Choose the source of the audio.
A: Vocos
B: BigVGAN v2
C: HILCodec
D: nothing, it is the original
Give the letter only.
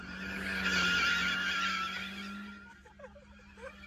D